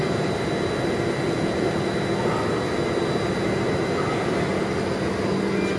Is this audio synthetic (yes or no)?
no